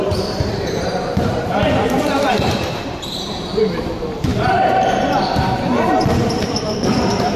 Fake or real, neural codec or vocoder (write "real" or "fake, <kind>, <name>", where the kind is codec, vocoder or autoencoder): fake, vocoder, BigVGAN v2